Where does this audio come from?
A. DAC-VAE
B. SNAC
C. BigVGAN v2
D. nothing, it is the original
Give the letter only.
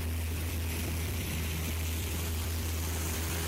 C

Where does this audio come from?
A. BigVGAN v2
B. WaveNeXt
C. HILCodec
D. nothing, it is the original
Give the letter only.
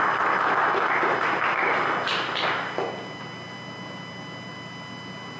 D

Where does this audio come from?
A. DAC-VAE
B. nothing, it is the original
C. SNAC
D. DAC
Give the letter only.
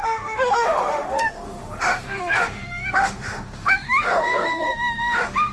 A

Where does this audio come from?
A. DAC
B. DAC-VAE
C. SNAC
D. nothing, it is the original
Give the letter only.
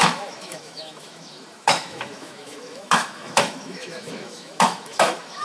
B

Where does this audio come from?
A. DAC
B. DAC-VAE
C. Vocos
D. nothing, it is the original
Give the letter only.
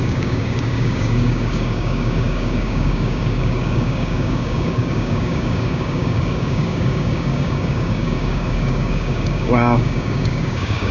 A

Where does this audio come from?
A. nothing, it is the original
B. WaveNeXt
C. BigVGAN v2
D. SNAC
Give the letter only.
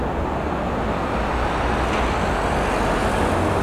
A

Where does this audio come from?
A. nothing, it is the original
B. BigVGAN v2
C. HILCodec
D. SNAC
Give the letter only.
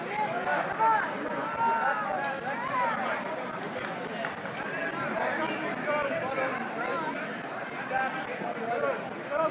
A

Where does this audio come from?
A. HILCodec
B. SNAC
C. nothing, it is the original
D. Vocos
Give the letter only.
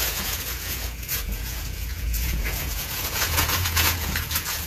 D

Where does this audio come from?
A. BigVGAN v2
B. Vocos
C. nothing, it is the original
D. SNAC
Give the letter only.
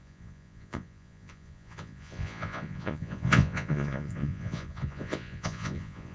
B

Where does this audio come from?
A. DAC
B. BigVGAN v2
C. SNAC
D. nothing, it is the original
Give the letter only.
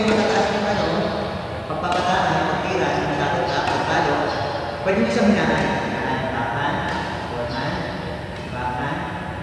D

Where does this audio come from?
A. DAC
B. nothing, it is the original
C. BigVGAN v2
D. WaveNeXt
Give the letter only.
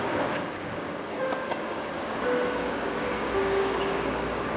A